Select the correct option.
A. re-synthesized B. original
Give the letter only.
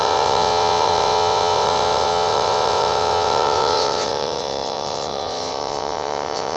A